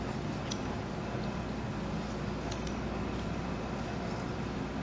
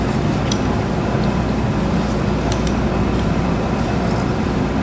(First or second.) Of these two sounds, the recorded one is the first